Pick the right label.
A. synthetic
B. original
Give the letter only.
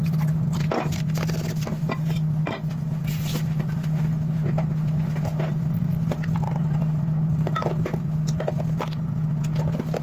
B